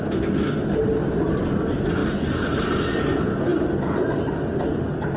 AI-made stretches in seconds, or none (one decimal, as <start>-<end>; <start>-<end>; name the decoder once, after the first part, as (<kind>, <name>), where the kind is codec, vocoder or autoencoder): none

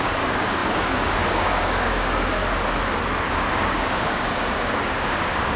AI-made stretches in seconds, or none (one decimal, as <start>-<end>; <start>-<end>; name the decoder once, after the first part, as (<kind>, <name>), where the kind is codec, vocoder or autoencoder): 0.0-2.4 (codec, DAC); 3.3-5.6

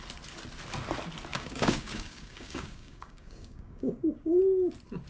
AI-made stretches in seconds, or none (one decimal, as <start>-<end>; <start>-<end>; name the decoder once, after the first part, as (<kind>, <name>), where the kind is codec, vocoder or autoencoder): 1.3-4.4 (codec, DAC)